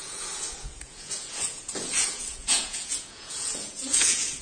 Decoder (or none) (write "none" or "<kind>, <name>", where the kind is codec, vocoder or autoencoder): vocoder, Vocos